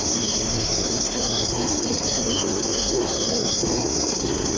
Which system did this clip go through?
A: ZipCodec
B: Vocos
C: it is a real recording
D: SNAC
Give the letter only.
D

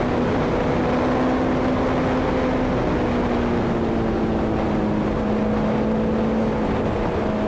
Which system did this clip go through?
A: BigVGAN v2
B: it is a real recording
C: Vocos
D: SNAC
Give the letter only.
B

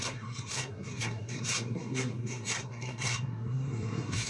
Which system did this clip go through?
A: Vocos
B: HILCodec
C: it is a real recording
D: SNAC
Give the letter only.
D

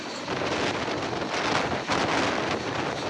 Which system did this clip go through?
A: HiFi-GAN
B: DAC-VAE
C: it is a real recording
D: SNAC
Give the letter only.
C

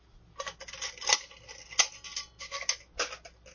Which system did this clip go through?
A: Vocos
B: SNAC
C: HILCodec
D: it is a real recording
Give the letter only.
D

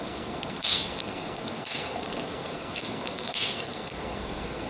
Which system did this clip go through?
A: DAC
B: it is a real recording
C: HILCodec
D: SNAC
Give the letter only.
D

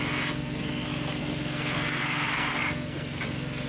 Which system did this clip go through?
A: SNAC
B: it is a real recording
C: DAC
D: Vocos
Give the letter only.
A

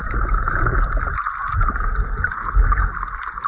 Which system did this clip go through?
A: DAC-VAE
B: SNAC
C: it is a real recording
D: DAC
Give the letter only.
C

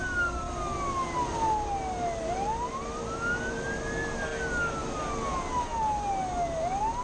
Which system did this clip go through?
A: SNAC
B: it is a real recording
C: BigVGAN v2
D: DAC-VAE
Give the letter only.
B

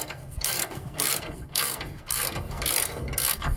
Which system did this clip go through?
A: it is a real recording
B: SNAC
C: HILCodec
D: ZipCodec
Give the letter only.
B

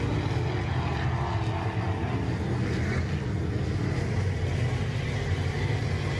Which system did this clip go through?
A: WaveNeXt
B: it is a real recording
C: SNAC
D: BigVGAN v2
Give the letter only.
B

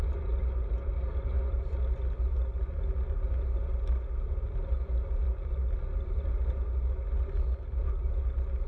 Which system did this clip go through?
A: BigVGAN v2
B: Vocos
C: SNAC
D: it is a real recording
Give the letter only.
D